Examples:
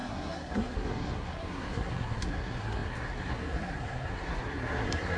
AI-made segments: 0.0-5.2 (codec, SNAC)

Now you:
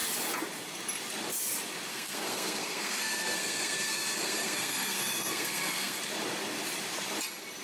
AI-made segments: 1.9-6.0 (codec, SNAC)

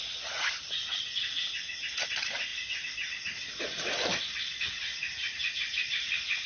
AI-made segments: none

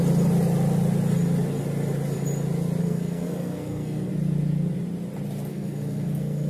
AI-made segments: 2.8-4.1 (codec, SNAC); 5.5-6.5

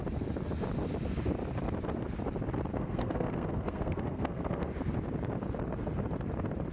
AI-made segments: 2.7-4.7 (codec, SNAC)

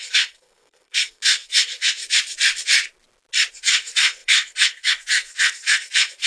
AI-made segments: 0.0-2.0 (codec, SNAC); 3.5-6.3

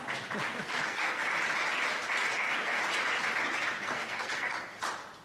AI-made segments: 0.5-1.2 (codec, SNAC); 2.2-2.8; 3.8-4.8